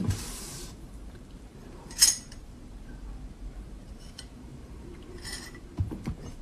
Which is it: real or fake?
fake